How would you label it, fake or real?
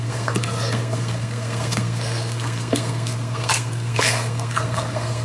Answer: fake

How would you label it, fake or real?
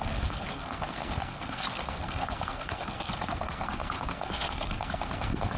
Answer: fake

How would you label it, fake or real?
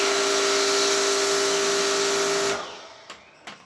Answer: real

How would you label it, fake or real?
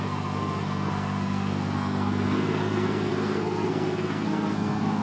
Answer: fake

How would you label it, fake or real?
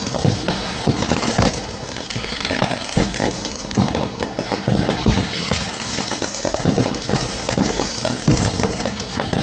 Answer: fake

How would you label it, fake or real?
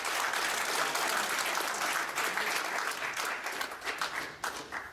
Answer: real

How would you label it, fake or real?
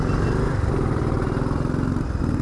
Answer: real